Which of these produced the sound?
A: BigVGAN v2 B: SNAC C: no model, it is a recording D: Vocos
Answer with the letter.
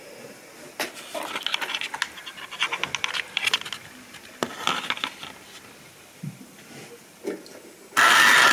C